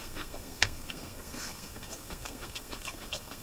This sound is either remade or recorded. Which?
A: remade